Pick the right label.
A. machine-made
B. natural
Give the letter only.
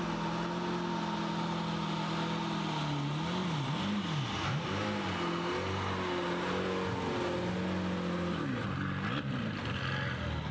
B